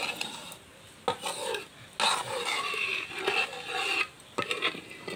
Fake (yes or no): no